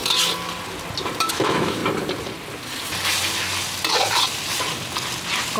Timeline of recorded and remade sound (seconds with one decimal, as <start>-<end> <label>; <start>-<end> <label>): 0.0-1.3 recorded; 1.3-1.8 remade; 1.8-5.6 recorded